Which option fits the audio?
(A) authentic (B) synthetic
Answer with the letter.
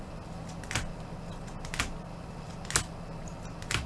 A